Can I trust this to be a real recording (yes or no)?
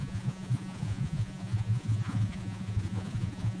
no